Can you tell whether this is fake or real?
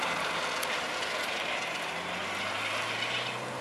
real